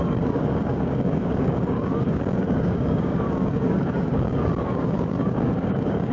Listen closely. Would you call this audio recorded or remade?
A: remade